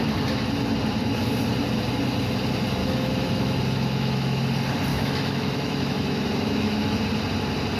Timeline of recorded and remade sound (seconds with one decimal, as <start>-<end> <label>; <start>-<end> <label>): 0.0-2.8 recorded; 2.8-4.4 remade; 4.4-4.9 recorded; 4.9-7.0 remade; 7.0-7.8 recorded